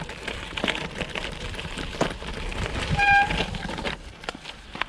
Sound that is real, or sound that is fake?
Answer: real